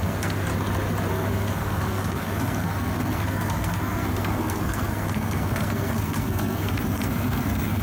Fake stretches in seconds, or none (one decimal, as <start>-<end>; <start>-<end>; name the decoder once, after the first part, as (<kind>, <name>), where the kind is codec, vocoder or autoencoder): 0.0-0.5 (codec, SNAC); 1.1-7.8